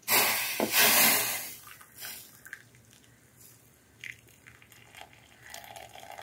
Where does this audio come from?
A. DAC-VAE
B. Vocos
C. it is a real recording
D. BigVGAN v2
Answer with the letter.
C